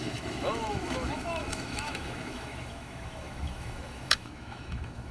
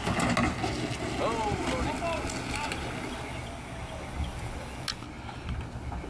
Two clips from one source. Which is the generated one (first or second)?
first